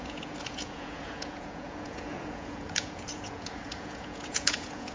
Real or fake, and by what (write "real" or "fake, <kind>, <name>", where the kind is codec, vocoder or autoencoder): fake, vocoder, Vocos